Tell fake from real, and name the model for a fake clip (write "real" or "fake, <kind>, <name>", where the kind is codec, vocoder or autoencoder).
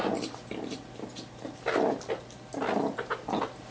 real